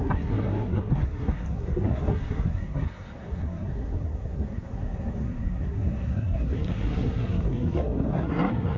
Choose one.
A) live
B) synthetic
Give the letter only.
B